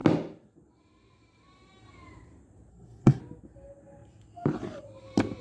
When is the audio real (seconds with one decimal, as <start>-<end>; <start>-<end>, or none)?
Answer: 0.0-2.7; 3.2-5.4